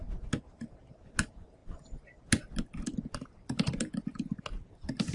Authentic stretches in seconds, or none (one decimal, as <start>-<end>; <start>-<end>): 0.0-5.1